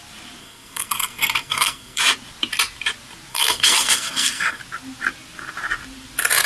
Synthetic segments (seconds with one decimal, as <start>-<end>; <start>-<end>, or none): 0.4-2.0; 3.3-4.6